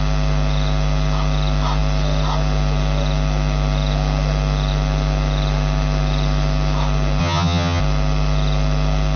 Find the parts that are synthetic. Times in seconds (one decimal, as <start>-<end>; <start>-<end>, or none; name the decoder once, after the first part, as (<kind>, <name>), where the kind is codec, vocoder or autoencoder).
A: 7.2-7.8 (vocoder, HiFi-GAN)